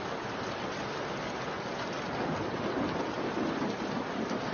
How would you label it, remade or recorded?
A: recorded